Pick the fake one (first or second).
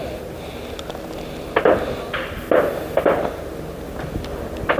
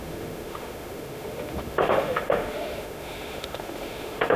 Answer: second